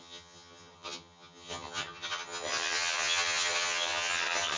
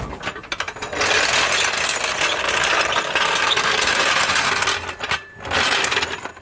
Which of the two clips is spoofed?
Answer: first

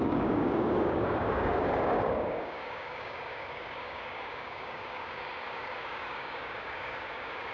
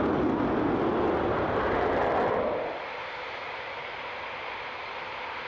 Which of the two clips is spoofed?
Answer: first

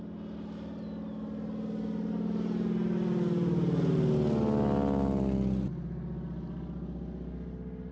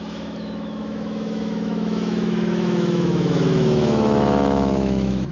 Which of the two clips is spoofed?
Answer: second